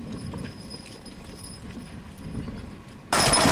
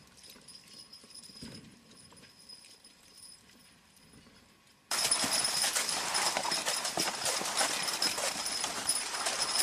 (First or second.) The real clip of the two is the first